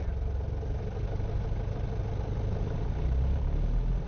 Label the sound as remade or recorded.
recorded